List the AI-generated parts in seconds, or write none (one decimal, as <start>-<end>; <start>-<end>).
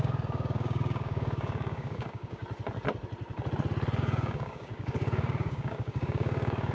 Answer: 0.0-2.4; 4.0-6.7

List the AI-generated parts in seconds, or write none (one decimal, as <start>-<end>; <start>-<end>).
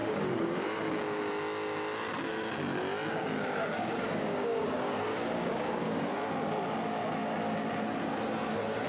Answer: 0.0-1.2; 3.1-6.1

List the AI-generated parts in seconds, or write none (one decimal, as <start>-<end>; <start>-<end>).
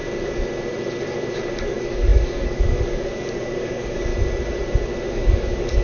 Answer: 1.6-4.1; 5.1-5.8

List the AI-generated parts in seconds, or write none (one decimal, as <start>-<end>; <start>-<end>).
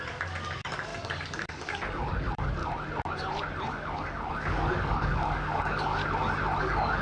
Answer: 0.0-2.6; 3.7-6.0; 6.6-7.0